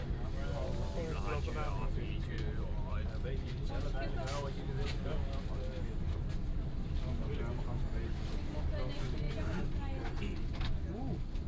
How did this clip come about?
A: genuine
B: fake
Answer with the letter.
A